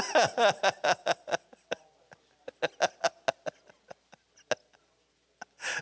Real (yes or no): yes